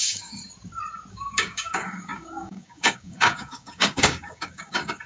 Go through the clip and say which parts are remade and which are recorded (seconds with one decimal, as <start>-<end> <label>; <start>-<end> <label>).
0.0-0.4 remade; 0.4-1.1 recorded; 1.1-5.1 remade